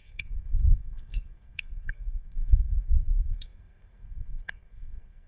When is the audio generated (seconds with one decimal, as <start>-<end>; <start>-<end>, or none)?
0.0-5.3